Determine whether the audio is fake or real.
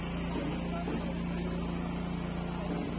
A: real